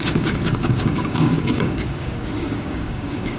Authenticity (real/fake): fake